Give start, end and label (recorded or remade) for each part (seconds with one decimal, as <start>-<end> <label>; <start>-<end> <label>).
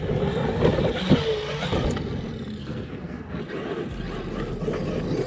0.0-2.6 recorded; 2.6-3.4 remade; 3.4-5.3 recorded